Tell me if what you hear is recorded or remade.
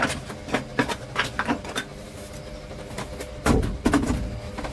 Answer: recorded